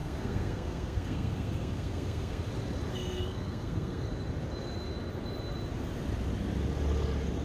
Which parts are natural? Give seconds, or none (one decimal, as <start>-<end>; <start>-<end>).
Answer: 2.5-2.9; 4.1-7.4